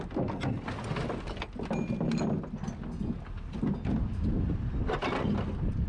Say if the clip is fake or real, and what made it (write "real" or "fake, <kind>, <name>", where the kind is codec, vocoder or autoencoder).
real